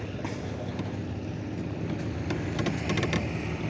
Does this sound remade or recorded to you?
recorded